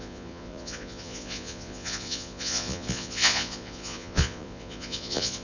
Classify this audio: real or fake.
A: fake